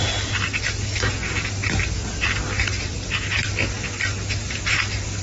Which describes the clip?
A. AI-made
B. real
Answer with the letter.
B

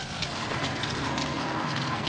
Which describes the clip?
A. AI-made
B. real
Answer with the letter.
A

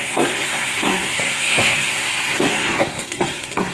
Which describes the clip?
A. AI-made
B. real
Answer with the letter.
A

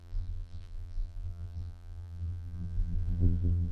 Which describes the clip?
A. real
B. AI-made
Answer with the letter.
B